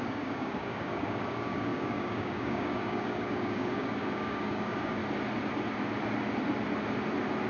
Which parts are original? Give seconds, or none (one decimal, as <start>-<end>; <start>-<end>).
5.0-7.5